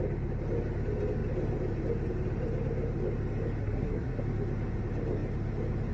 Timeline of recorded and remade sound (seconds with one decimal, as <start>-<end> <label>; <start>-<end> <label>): 0.0-3.6 recorded; 3.6-4.2 remade; 4.2-5.9 recorded